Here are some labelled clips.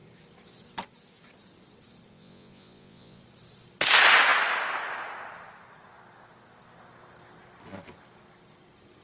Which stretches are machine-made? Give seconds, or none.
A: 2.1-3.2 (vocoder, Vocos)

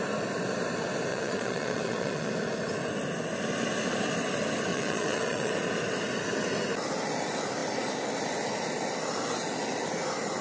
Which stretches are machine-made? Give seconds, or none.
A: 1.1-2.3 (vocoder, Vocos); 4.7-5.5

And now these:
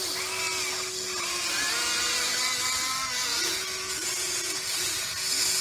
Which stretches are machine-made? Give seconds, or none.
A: 3.3-5.6 (vocoder, Vocos)